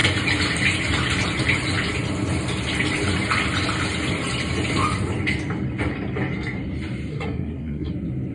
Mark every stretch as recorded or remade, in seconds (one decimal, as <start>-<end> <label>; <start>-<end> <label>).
0.0-7.1 recorded; 7.1-7.9 remade; 7.9-8.3 recorded